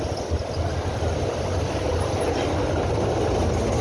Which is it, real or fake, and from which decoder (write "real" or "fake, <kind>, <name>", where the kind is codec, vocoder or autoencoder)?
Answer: real